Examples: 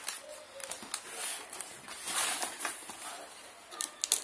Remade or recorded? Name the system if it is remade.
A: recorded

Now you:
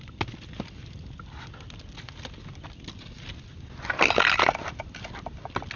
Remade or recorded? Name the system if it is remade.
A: recorded